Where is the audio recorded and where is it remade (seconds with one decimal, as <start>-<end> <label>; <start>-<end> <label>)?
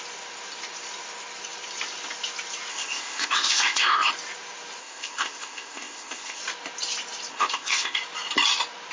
0.0-2.7 recorded; 2.7-4.1 remade; 4.1-4.8 recorded; 4.8-6.4 remade; 6.4-7.3 recorded; 7.3-8.0 remade; 8.0-8.9 recorded